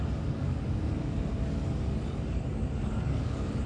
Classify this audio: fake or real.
fake